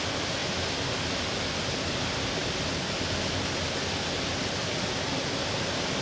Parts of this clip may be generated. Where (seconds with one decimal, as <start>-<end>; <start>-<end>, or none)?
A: none